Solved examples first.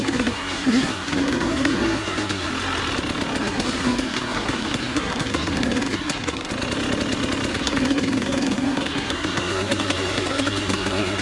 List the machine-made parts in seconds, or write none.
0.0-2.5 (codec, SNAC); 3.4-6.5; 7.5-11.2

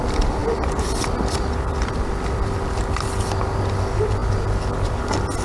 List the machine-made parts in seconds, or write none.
none

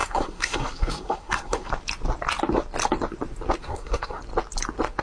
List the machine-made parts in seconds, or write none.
0.0-1.7 (codec, SNAC); 3.6-4.2

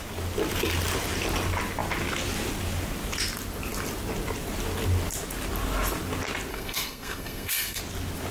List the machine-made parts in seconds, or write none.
6.5-7.8 (codec, SNAC)

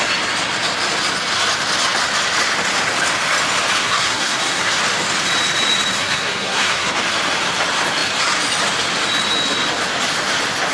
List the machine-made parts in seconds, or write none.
3.8-4.8 (codec, SNAC); 6.0-6.9

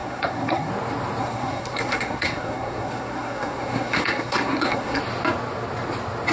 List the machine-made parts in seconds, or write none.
0.0-0.7 (codec, SNAC); 1.2-5.0

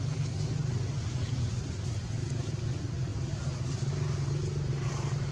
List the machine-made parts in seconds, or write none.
none

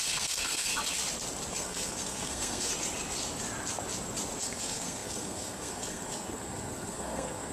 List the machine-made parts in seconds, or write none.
0.0-0.7 (codec, SNAC); 1.5-2.7; 4.4-7.5